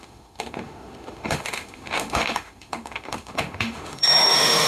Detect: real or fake fake